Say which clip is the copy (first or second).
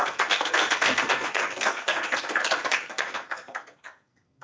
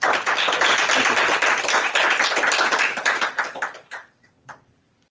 first